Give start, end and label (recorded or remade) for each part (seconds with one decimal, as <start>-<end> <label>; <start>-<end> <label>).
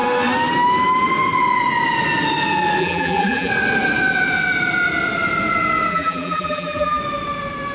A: 0.0-2.8 recorded; 2.8-3.5 remade; 3.5-5.9 recorded; 5.9-7.0 remade; 7.0-7.7 recorded